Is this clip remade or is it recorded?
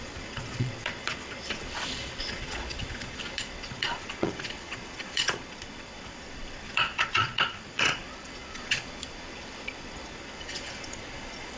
remade